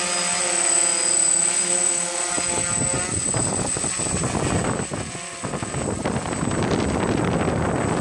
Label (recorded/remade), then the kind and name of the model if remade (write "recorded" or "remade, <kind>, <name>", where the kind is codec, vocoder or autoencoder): recorded